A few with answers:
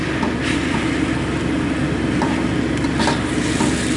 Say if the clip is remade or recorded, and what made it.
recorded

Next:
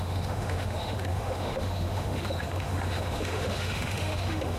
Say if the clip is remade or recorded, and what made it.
remade, autoencoder, DAC-VAE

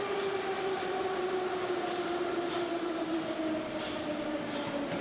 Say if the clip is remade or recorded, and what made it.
recorded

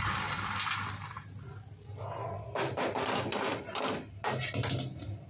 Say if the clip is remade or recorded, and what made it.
recorded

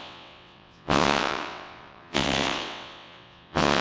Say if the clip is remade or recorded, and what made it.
remade, vocoder, WaveNeXt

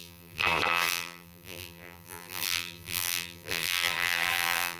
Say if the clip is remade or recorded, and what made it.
remade, vocoder, BigVGAN v2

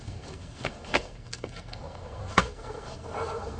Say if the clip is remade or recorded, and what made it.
remade, codec, SNAC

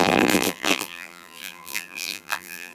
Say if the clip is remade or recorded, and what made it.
remade, vocoder, BigVGAN v2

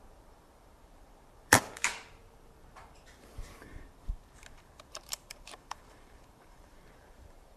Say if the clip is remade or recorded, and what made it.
remade, vocoder, BigVGAN v2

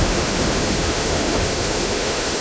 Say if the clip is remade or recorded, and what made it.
remade, autoencoder, DAC-VAE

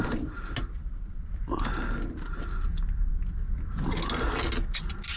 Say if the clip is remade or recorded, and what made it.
recorded